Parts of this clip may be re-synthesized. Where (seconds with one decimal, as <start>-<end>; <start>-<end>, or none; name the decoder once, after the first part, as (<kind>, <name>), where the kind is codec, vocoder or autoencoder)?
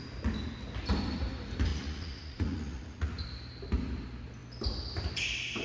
1.7-3.1 (vocoder, Vocos)